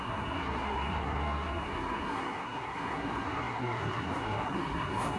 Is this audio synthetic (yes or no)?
yes